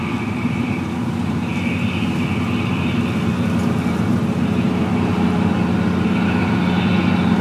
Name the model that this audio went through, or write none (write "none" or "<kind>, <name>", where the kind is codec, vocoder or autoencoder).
none